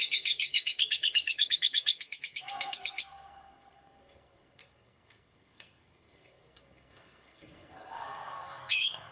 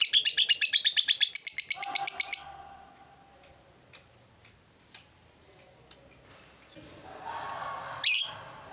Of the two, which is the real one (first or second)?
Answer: second